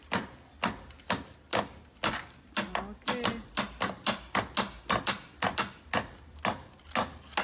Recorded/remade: recorded